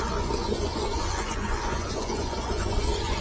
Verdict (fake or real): fake